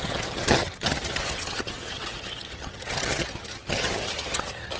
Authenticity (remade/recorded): remade